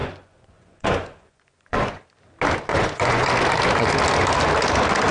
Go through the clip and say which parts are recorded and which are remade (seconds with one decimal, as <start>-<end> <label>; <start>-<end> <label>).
0.0-2.0 remade; 2.0-2.7 recorded; 2.7-3.3 remade; 3.3-5.1 recorded